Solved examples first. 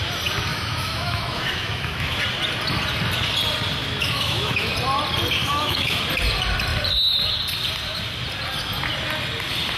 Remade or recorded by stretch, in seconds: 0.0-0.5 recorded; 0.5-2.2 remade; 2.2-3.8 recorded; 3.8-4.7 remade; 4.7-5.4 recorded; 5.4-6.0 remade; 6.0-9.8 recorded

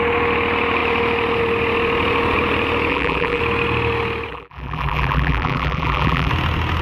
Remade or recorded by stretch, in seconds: 0.0-2.9 recorded; 2.9-3.4 remade; 3.4-4.3 recorded; 4.3-6.3 remade; 6.3-6.8 recorded

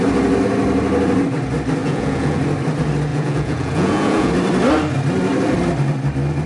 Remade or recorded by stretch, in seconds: 0.0-1.8 recorded; 1.8-2.4 remade; 2.4-3.1 recorded; 3.1-4.3 remade; 4.3-6.5 recorded

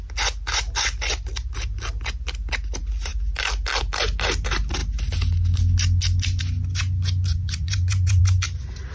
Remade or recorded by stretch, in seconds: 0.0-7.3 recorded; 7.3-8.2 remade; 8.2-8.9 recorded

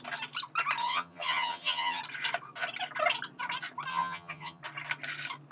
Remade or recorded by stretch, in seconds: 0.0-0.8 recorded; 0.8-2.0 remade; 2.0-3.9 recorded; 3.9-4.6 remade; 4.6-5.5 recorded

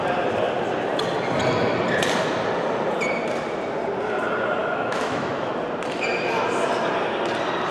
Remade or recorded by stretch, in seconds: 0.0-4.6 recorded; 4.6-5.5 remade; 5.5-7.7 recorded